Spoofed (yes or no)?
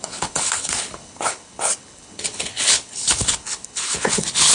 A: yes